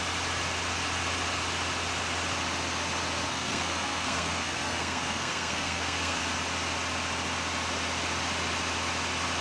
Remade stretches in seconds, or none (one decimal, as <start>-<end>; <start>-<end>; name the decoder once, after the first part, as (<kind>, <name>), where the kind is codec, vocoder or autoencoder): 3.3-6.2 (codec, SNAC)